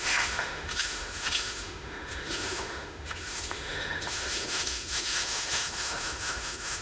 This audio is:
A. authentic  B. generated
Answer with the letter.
B